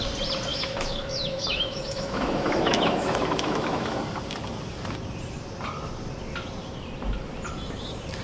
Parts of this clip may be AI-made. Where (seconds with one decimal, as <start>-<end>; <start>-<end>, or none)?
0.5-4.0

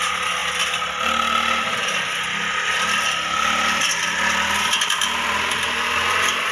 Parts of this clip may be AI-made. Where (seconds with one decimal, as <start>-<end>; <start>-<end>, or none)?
none

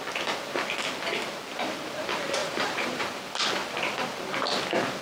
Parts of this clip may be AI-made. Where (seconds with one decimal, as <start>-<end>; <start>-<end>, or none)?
2.4-3.0

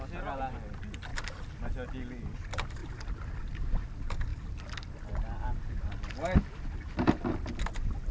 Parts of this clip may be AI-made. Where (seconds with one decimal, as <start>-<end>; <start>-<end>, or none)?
none